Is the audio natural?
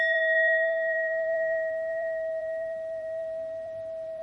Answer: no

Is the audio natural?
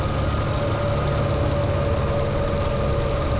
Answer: yes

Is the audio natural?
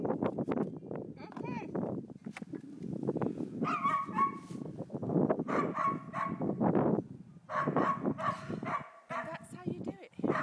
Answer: yes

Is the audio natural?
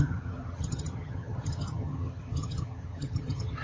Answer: no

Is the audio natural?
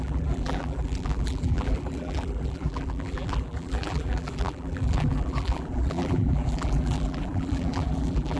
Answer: no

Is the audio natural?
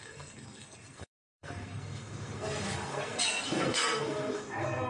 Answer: no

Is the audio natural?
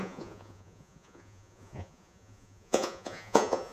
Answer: no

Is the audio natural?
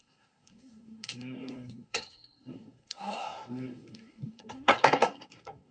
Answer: no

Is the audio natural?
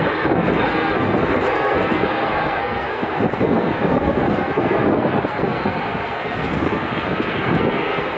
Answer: no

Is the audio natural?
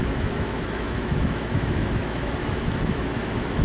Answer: no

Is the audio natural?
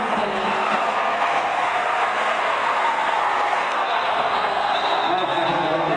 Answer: no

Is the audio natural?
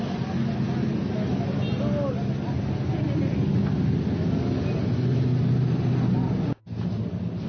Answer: yes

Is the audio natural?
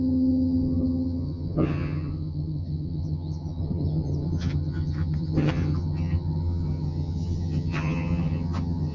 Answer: no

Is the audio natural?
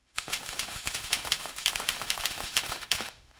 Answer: no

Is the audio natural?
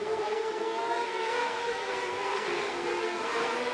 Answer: no